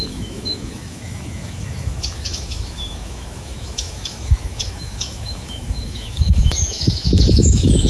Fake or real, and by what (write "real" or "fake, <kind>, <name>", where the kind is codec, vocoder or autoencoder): fake, autoencoder, DAC-VAE